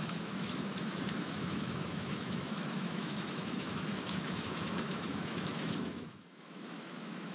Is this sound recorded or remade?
remade